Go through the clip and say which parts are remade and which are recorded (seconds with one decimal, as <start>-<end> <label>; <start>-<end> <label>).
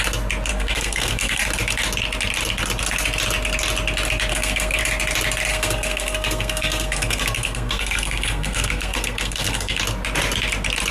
0.0-0.5 recorded; 0.5-1.4 remade; 1.4-4.3 recorded; 4.3-4.8 remade; 4.8-5.5 recorded; 5.5-9.8 remade; 9.8-10.9 recorded